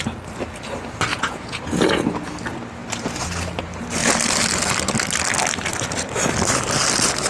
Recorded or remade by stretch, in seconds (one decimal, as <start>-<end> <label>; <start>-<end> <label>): 0.0-1.1 recorded; 1.1-1.6 remade; 1.6-7.3 recorded

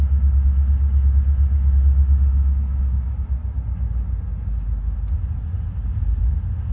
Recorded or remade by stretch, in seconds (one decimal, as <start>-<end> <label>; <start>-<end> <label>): 0.0-2.3 recorded; 2.3-2.8 remade; 2.8-6.7 recorded